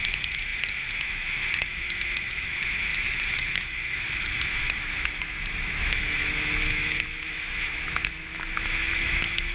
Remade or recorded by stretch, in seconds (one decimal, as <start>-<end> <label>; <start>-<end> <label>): 0.0-9.5 remade